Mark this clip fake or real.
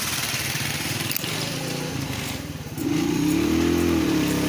fake